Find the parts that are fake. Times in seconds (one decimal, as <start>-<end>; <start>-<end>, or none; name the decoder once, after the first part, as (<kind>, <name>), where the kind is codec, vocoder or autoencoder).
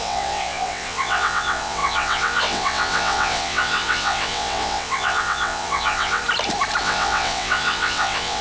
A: 0.0-6.2 (vocoder, WaveNeXt); 6.8-8.4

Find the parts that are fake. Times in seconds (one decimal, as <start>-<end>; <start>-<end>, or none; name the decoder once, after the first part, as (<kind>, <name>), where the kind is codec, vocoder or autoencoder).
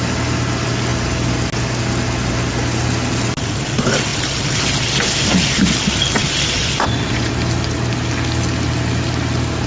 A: 6.6-7.3 (vocoder, Vocos)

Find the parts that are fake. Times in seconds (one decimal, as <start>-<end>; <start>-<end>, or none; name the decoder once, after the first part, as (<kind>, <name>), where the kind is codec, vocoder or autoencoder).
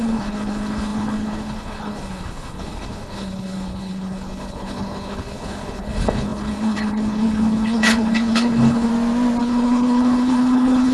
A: 0.0-8.9 (codec, HILCodec); 9.4-10.9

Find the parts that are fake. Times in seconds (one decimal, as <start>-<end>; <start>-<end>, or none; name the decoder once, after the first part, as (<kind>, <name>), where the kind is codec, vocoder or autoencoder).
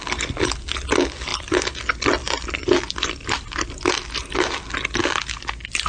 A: none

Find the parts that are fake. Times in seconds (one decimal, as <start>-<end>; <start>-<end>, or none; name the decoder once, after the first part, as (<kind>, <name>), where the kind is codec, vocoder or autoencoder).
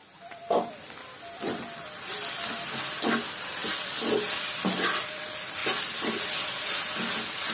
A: none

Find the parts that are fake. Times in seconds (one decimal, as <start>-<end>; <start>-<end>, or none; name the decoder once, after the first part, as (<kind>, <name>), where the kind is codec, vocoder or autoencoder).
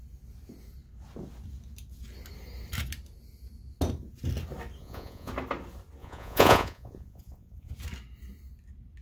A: 4.8-5.3 (vocoder, Vocos); 6.0-7.7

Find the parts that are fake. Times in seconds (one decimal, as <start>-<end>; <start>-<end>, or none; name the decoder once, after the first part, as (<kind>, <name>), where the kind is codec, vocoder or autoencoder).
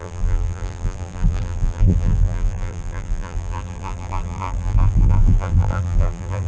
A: 0.0-6.5 (vocoder, BigVGAN v2)